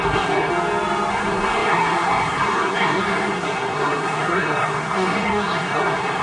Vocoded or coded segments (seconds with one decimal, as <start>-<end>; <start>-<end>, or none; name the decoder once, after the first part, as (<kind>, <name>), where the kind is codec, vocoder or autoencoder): 0.0-0.5 (codec, SNAC); 1.1-6.2